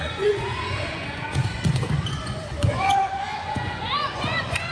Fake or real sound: fake